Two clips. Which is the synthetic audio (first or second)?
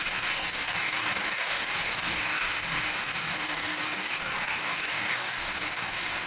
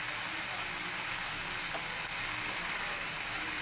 first